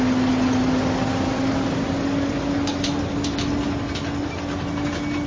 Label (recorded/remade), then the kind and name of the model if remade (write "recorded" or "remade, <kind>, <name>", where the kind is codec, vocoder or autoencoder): recorded